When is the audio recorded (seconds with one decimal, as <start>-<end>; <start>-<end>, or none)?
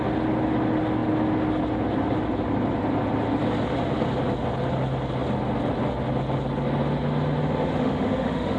0.0-7.8